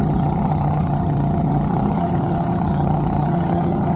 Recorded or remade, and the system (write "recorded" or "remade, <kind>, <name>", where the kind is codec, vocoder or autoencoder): remade, vocoder, HiFi-GAN